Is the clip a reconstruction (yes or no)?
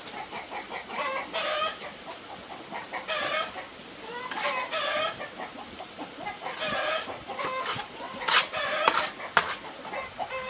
no